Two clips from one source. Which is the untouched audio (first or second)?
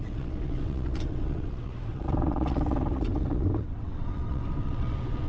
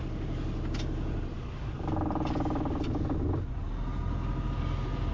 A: second